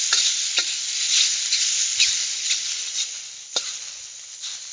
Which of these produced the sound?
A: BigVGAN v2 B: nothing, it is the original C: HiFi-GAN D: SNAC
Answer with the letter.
B